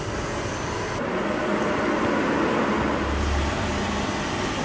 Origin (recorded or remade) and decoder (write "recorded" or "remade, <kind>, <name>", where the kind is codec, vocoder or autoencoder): recorded